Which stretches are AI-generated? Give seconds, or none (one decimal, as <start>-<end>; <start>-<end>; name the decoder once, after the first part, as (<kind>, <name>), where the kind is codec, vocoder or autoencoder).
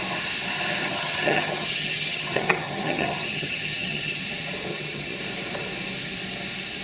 0.8-4.2 (vocoder, HiFi-GAN); 4.7-5.2